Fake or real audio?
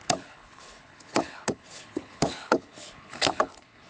fake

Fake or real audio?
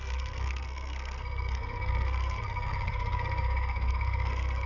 fake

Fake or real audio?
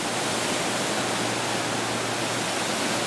real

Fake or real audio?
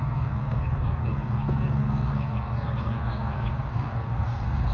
fake